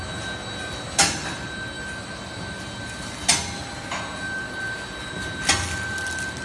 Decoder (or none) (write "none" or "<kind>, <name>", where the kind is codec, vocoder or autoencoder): none